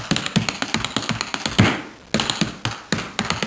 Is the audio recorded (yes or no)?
yes